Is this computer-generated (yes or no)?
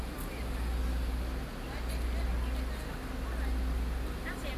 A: no